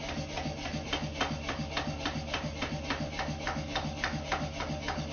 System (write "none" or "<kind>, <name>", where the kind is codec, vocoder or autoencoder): none